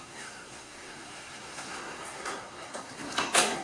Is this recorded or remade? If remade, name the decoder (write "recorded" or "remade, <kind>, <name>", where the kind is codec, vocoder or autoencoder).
remade, codec, SNAC